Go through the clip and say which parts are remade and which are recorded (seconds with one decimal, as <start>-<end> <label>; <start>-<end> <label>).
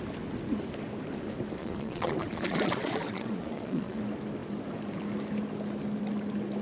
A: 0.0-1.6 recorded; 1.6-4.0 remade; 4.0-6.6 recorded